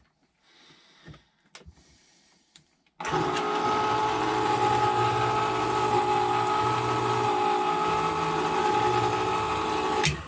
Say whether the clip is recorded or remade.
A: recorded